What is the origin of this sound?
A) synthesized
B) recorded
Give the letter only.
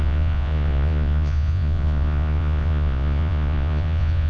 A